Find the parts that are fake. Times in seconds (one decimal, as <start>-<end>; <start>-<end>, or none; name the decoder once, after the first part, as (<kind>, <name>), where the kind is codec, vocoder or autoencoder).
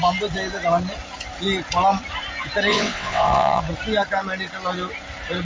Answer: 2.7-3.6 (vocoder, WaveNeXt)